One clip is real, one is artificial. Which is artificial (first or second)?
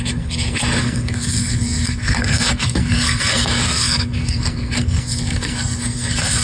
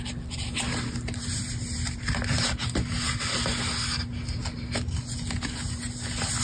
first